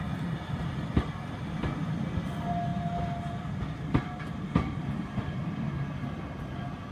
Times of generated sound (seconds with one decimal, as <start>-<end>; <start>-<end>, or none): none